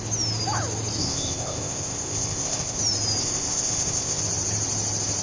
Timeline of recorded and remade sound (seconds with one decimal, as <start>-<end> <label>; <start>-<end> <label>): 0.0-1.0 recorded; 1.0-2.8 remade; 2.8-3.2 recorded; 3.2-4.2 remade; 4.2-5.2 recorded